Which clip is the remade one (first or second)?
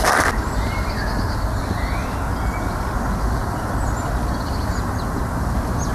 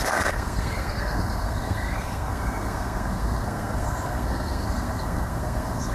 second